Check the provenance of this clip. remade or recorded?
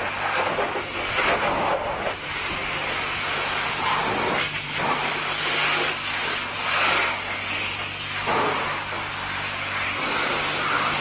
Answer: recorded